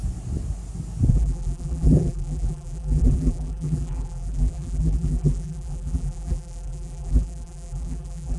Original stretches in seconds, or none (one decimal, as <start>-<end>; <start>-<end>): 0.0-1.1